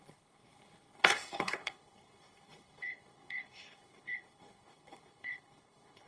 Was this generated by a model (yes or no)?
yes